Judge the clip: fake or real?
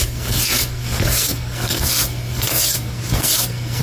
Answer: fake